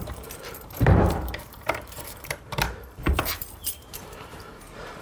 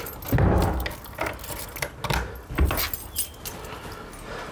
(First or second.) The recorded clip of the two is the second